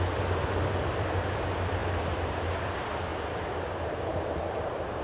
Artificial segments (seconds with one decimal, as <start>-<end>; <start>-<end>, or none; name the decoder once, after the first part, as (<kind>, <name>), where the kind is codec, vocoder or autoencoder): 0.0-3.1 (vocoder, BigVGAN v2); 3.7-5.0